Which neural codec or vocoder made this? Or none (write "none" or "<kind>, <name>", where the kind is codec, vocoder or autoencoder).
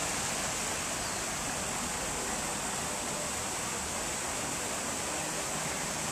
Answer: none